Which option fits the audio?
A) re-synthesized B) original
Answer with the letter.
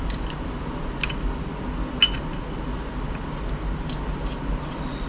B